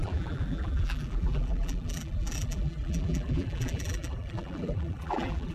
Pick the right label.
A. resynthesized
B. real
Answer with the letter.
A